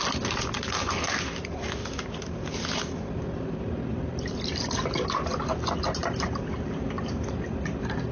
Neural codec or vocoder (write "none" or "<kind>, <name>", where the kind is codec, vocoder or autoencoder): none